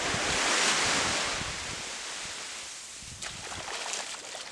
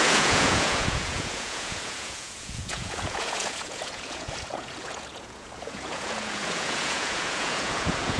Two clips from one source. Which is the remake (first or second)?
second